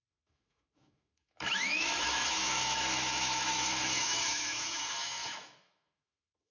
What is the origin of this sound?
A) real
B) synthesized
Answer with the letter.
B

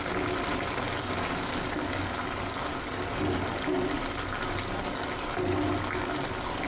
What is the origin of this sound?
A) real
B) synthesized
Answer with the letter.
A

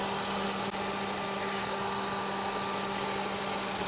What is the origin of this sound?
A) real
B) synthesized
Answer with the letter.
A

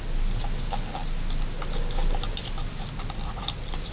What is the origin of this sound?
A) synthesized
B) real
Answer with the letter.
B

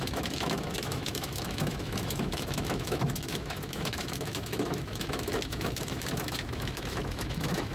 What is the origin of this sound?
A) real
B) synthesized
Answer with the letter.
B